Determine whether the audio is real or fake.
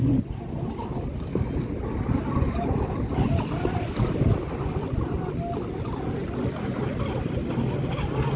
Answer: real